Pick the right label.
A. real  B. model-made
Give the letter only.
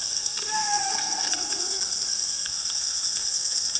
B